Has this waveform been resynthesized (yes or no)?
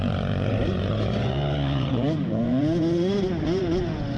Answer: yes